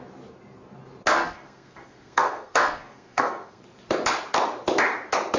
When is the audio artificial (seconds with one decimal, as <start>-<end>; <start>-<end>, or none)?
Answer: 1.1-3.6